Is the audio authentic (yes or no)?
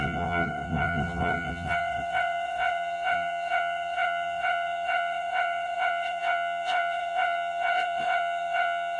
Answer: no